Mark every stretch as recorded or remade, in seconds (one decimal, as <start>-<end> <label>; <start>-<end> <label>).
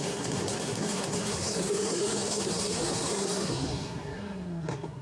0.0-5.0 remade